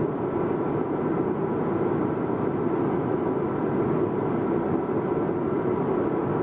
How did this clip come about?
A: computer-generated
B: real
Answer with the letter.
B